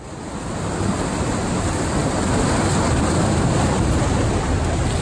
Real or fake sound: real